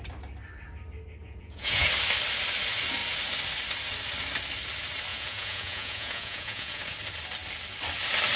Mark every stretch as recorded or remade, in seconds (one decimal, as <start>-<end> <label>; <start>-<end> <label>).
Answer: 0.0-1.2 recorded; 1.2-1.9 remade; 1.9-5.1 recorded; 5.1-6.8 remade; 6.8-8.4 recorded